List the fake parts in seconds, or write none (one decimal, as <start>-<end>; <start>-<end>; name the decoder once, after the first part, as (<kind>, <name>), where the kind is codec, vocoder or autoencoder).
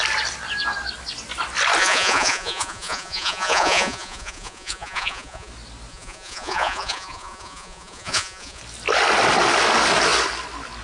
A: 1.8-5.5 (vocoder, Vocos); 5.9-8.6